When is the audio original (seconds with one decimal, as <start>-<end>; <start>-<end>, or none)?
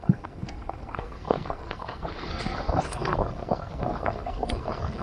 none